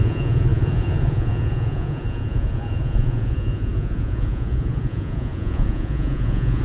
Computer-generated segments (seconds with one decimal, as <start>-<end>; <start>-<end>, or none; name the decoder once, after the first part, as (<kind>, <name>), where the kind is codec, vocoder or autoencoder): 0.0-6.6 (vocoder, Vocos)